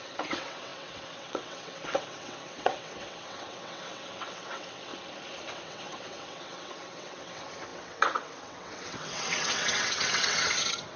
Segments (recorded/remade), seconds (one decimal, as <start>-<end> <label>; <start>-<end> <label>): 0.0-4.9 remade; 4.9-5.5 recorded; 5.5-11.0 remade

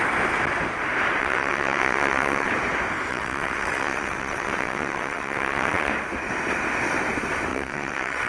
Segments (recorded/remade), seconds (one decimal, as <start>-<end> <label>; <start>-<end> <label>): 0.0-1.2 recorded; 1.2-2.5 remade; 2.5-3.1 recorded; 3.1-5.9 remade; 5.9-7.5 recorded; 7.5-8.3 remade

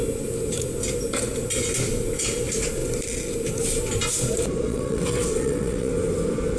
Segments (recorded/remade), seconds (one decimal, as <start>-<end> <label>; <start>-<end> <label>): 0.0-4.7 recorded; 4.7-5.9 remade; 5.9-6.6 recorded

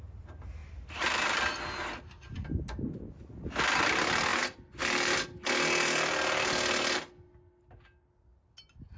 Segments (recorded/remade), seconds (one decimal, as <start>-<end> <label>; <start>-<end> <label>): 0.0-9.0 recorded

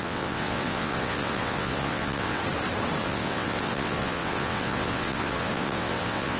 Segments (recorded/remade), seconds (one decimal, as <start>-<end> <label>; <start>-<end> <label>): 0.0-2.4 remade; 2.4-3.0 recorded; 3.0-6.4 remade

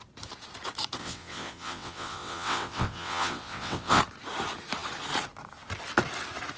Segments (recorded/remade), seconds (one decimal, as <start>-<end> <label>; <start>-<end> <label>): 0.0-1.0 recorded; 1.0-4.0 remade; 4.0-6.6 recorded

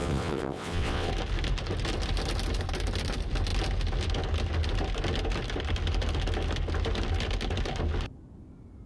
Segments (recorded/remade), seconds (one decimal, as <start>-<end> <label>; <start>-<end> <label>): 0.0-1.1 remade; 1.1-8.9 recorded